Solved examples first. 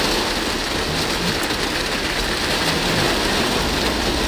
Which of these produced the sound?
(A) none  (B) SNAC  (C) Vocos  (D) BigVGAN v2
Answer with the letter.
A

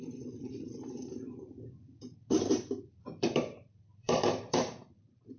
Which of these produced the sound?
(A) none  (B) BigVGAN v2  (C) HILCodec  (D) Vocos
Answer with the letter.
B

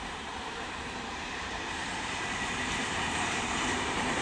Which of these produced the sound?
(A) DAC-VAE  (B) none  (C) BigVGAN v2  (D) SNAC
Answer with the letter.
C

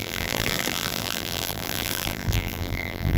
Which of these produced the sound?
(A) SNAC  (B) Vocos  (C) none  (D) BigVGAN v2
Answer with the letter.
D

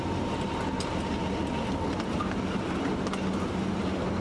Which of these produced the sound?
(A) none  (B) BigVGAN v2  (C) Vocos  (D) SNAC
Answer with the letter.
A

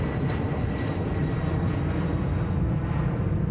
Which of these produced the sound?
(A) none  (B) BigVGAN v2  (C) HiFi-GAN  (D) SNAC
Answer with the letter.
A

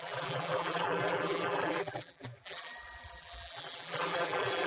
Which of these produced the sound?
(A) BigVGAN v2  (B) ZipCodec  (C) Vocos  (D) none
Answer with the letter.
A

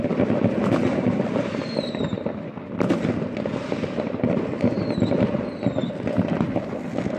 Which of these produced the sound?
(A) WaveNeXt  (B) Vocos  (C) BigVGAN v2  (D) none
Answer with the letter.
D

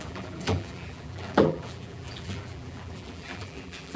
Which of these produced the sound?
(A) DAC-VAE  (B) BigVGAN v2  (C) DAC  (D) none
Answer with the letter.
B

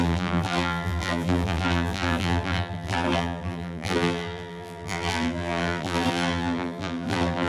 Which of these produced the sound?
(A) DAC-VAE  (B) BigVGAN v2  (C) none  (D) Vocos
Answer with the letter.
B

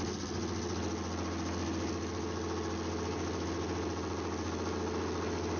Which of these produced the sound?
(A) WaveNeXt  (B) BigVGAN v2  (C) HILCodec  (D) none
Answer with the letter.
D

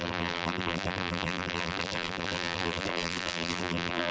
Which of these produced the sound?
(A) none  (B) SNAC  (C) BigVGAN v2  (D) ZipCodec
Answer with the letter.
C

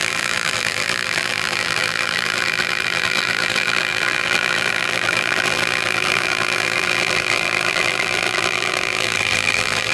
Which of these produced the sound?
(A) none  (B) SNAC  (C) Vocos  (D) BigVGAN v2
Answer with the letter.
D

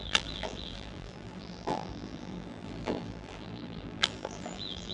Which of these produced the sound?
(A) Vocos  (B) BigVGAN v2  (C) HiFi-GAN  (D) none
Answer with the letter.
B